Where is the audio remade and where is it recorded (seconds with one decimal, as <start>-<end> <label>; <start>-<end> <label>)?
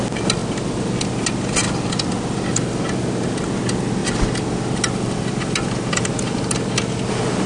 0.0-7.5 recorded